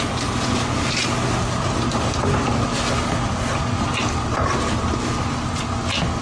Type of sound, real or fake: real